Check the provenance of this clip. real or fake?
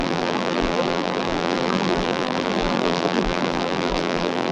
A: fake